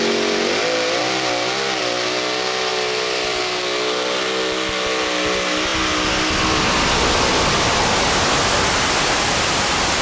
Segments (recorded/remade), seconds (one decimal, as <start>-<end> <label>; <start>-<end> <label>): 0.0-2.7 recorded; 2.7-3.4 remade; 3.4-10.0 recorded